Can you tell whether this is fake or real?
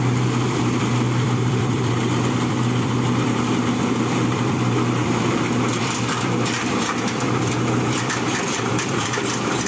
fake